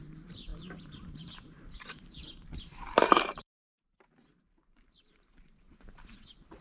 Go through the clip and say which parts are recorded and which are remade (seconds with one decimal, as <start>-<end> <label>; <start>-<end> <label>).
0.0-6.6 remade

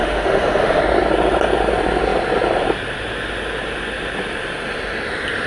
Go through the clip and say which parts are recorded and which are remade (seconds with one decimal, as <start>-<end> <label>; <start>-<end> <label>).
0.0-0.8 remade; 0.8-5.5 recorded

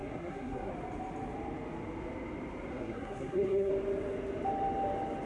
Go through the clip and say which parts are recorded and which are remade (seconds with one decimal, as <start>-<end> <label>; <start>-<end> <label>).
0.0-0.7 remade; 0.7-2.7 recorded; 2.7-3.7 remade; 3.7-5.3 recorded

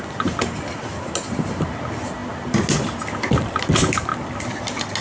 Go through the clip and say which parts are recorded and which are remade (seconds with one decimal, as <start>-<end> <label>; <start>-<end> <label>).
0.0-5.0 recorded

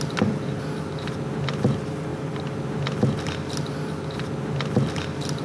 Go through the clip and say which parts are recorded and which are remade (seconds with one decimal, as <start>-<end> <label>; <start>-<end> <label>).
0.0-5.4 recorded

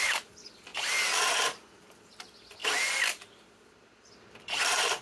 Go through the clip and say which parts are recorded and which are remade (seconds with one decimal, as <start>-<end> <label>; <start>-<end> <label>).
0.0-5.0 recorded

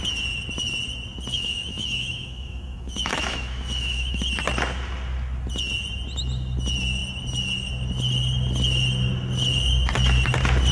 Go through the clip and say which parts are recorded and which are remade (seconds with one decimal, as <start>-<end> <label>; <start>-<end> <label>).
0.0-1.3 recorded; 1.3-4.2 remade; 4.2-10.7 recorded

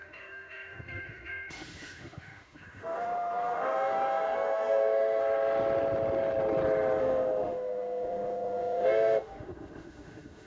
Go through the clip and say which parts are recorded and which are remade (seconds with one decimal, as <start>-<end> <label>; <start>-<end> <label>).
0.0-5.2 remade; 5.2-7.0 recorded; 7.0-10.5 remade